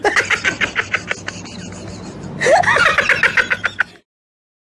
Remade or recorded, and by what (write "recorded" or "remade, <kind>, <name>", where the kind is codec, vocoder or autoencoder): recorded